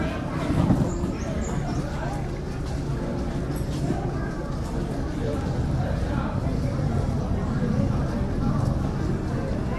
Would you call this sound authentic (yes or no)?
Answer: yes